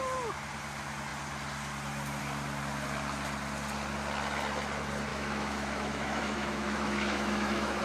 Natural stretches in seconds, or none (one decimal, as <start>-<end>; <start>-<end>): 0.0-5.1